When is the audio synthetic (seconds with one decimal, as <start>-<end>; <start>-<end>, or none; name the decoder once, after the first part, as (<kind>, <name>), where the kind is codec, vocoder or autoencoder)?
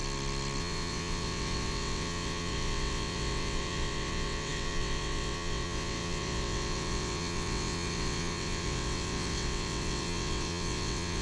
0.6-11.2 (vocoder, WaveNeXt)